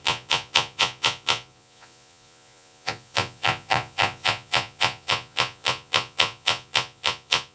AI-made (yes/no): yes